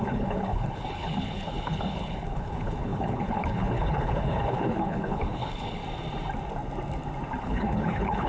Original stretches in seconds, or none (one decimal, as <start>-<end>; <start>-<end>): 5.8-7.4